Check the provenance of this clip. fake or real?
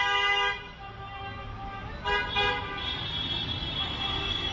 real